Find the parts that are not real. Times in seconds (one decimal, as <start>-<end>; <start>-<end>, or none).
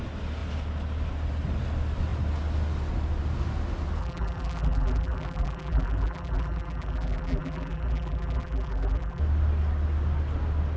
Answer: 4.0-9.2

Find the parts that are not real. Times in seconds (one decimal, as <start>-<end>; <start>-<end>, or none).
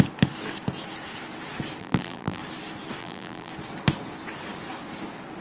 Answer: 1.8-2.4; 3.0-3.5